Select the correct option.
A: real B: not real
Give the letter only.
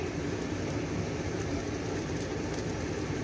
B